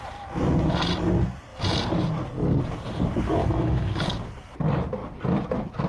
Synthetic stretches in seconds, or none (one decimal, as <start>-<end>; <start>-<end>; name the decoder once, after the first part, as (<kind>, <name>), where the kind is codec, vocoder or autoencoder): 3.4-4.0 (autoencoder, DAC-VAE)